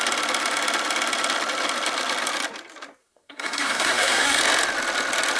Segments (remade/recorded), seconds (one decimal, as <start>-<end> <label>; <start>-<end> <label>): 0.0-3.0 recorded; 3.0-4.4 remade; 4.4-5.4 recorded